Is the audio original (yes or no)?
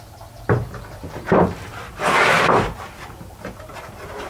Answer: no